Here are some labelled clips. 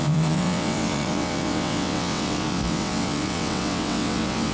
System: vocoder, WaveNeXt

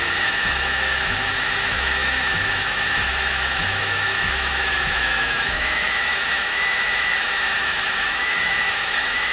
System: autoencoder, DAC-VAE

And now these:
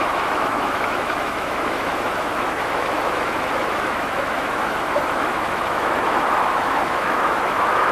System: autoencoder, DAC-VAE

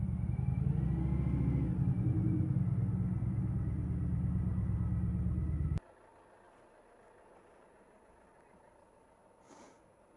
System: none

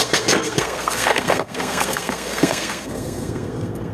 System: codec, SNAC